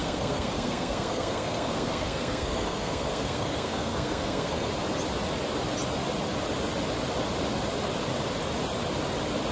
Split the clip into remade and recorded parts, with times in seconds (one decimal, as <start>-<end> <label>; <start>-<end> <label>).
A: 0.0-4.7 remade; 4.7-9.5 recorded